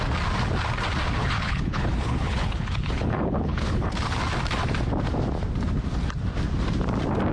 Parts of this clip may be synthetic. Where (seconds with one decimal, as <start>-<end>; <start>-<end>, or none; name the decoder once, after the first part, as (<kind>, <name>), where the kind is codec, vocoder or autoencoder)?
1.2-4.2 (codec, HILCodec)